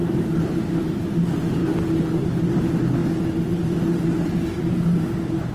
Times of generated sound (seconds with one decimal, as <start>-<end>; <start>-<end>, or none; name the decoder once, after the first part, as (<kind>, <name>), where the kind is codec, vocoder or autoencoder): none